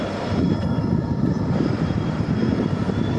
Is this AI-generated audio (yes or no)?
yes